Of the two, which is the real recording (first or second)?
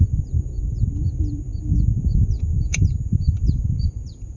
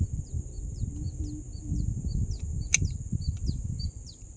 second